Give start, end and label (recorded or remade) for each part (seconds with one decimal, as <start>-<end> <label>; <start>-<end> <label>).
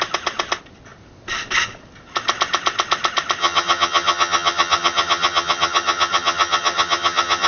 0.0-3.4 recorded; 3.4-7.5 remade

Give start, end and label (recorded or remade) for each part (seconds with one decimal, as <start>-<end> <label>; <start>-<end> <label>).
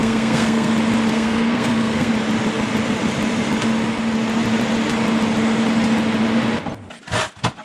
0.0-0.7 remade; 0.7-1.1 recorded; 1.1-2.1 remade; 2.1-7.6 recorded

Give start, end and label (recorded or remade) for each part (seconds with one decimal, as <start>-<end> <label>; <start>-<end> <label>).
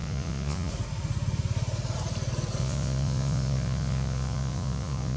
0.0-0.7 remade; 0.7-2.6 recorded; 2.6-5.2 remade